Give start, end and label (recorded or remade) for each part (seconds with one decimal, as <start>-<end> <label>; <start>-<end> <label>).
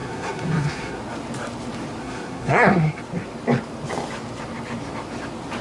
0.0-1.0 remade; 1.0-2.0 recorded; 2.0-3.0 remade; 3.0-5.6 recorded